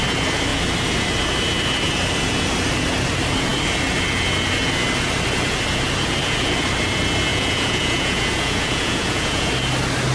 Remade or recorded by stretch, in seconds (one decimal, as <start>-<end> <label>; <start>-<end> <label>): 0.0-7.3 recorded; 7.3-9.5 remade; 9.5-10.1 recorded